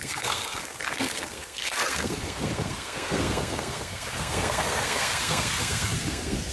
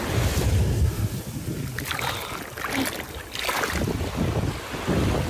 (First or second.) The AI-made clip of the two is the first